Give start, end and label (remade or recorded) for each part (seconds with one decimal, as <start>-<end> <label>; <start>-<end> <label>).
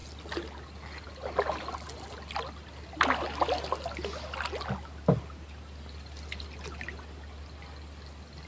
0.0-8.5 recorded